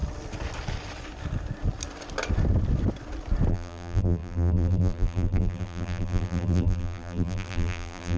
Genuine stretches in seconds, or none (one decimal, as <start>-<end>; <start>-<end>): 0.0-3.5

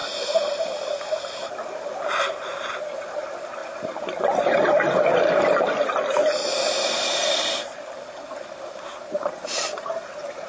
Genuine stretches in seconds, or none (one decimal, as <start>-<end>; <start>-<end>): 0.0-2.0; 3.6-8.7